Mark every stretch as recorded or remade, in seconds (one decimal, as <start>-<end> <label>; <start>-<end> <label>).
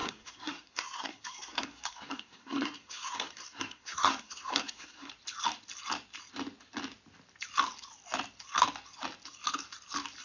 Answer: 0.0-5.1 remade; 5.1-10.2 recorded